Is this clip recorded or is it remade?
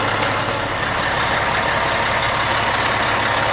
recorded